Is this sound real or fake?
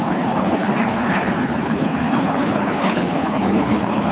fake